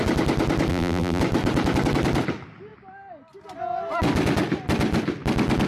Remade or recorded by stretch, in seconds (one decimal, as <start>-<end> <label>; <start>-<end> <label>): 0.0-0.7 recorded; 0.7-1.2 remade; 1.2-5.7 recorded